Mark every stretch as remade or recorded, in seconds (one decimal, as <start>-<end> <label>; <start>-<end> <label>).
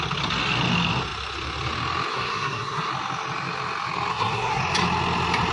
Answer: 0.0-2.1 recorded; 2.1-2.9 remade; 2.9-4.1 recorded; 4.1-4.6 remade; 4.6-5.5 recorded